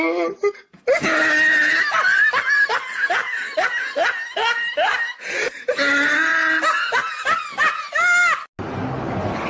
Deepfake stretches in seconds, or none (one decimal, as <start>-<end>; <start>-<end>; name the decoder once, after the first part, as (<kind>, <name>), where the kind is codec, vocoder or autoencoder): none